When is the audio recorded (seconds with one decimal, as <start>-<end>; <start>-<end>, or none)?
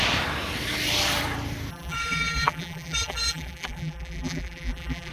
0.0-1.7